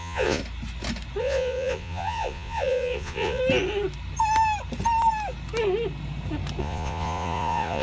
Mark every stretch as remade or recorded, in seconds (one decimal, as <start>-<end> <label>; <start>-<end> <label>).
0.0-0.4 remade; 0.4-1.2 recorded; 1.2-3.4 remade; 3.4-6.6 recorded; 6.6-7.8 remade